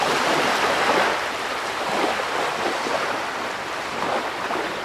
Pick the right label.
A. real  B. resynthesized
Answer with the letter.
B